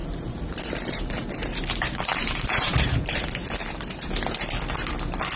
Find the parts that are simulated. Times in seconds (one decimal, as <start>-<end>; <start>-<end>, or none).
0.0-3.2; 3.6-4.1

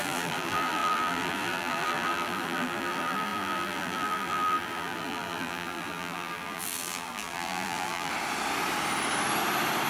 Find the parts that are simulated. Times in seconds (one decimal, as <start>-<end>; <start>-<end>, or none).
0.0-8.1

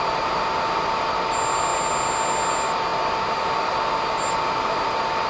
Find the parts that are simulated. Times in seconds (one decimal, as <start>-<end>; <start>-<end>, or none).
none

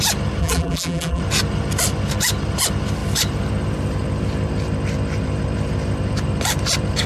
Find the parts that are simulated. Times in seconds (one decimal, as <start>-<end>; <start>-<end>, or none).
0.4-1.2

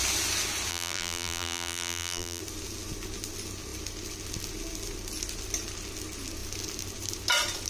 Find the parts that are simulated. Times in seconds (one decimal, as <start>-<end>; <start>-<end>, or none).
0.7-2.4

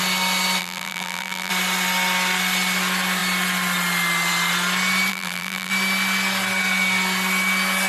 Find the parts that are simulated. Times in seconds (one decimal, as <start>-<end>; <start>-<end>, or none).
0.6-1.5; 5.1-5.7

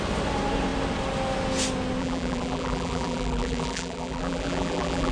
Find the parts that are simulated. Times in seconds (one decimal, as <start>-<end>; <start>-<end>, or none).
2.0-5.1